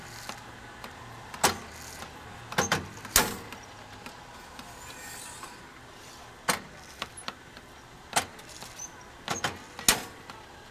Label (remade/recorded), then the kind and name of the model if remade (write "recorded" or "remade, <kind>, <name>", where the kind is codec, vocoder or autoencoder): recorded